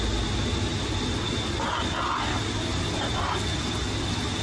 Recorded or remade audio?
recorded